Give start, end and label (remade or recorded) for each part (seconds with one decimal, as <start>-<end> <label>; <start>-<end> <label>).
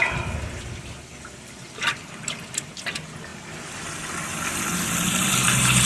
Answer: 0.0-5.9 recorded